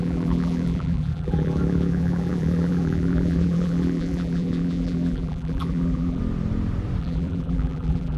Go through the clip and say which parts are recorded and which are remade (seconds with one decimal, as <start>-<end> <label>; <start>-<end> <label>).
0.0-6.2 remade; 6.2-7.0 recorded; 7.0-8.2 remade